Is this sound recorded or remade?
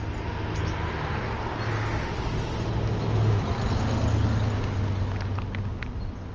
recorded